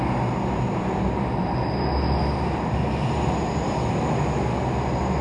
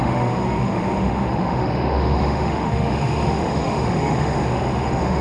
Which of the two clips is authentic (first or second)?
first